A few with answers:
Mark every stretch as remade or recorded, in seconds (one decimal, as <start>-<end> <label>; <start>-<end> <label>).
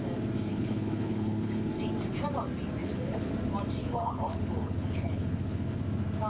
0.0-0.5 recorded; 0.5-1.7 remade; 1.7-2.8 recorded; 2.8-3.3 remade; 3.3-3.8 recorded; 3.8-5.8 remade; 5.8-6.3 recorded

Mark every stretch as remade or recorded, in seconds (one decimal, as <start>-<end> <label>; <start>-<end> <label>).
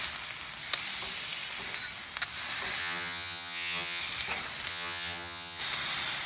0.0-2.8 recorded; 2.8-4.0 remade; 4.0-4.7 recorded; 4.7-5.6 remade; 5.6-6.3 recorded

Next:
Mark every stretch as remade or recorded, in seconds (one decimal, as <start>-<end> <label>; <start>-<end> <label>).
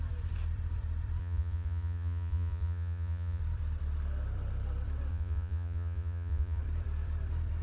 0.0-1.2 recorded; 1.2-3.4 remade; 3.4-5.1 recorded; 5.1-6.6 remade; 6.6-7.6 recorded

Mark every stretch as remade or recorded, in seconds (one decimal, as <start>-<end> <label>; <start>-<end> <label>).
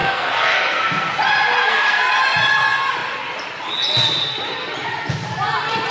0.0-1.1 remade; 1.1-1.6 recorded; 1.6-2.1 remade; 2.1-5.9 recorded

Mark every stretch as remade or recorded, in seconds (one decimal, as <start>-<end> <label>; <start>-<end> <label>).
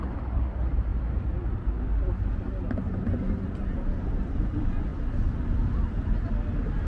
0.0-6.9 recorded